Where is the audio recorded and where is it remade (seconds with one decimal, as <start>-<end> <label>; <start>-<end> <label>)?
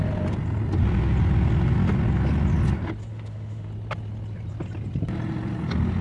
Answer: 0.0-3.1 recorded; 3.1-3.7 remade; 3.7-6.0 recorded